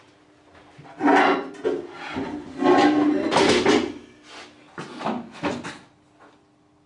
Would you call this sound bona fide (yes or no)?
yes